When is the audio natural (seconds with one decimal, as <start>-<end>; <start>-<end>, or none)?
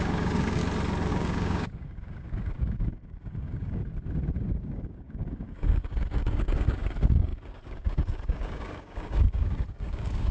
0.6-1.1; 3.8-4.6